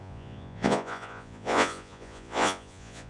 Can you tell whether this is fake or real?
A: fake